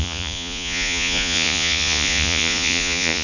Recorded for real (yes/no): no